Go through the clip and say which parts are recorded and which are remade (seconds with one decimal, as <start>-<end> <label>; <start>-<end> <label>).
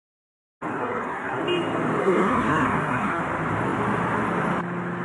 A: 0.0-0.7 recorded; 0.7-1.4 remade; 1.4-2.0 recorded; 2.0-3.2 remade; 3.2-5.0 recorded